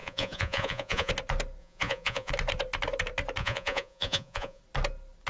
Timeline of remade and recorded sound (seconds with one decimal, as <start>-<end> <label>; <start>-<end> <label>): 0.0-1.1 remade; 1.1-1.6 recorded; 1.6-2.3 remade; 2.3-3.4 recorded; 3.4-4.6 remade; 4.6-5.3 recorded